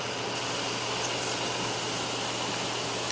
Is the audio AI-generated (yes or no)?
no